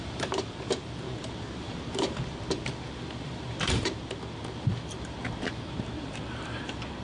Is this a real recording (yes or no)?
no